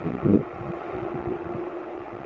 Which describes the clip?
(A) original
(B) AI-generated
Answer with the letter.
B